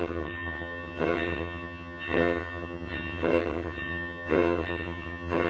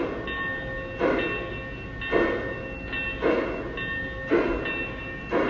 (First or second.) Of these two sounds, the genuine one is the second